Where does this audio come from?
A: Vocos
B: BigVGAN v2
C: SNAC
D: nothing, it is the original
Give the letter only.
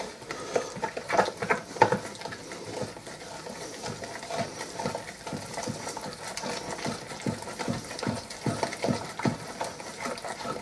D